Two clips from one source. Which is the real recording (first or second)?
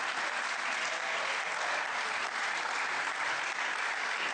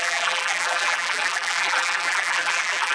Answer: first